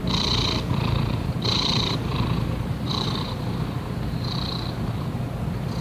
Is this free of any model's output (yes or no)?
no